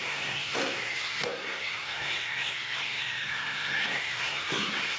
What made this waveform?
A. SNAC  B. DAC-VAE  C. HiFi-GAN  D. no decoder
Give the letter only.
A